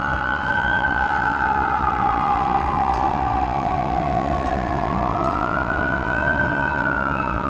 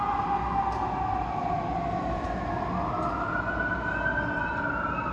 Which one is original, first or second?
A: second